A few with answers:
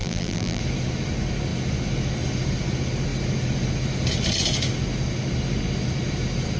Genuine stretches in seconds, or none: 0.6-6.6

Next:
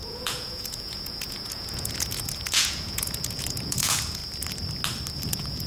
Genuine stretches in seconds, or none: 4.2-5.3

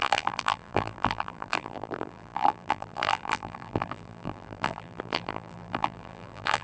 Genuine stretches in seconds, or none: none

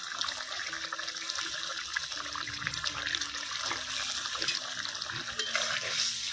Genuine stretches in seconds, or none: 0.0-6.3

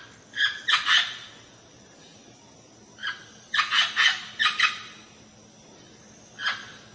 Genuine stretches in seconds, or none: 0.0-6.9

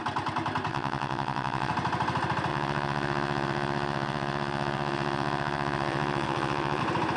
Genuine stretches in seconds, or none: 0.0-0.7; 1.7-2.5; 6.8-7.2

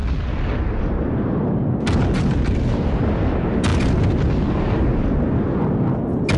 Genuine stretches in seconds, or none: 0.0-6.4